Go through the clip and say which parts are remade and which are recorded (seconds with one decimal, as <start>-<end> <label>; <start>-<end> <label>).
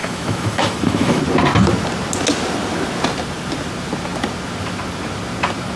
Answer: 0.0-1.2 remade; 1.2-5.8 recorded